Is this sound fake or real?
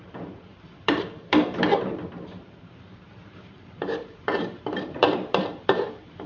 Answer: fake